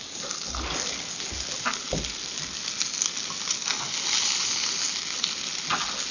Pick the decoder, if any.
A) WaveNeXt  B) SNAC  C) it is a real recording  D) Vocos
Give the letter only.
C